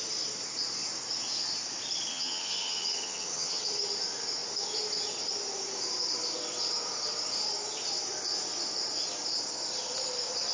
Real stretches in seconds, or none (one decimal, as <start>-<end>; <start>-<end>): 0.0-2.1; 3.6-10.5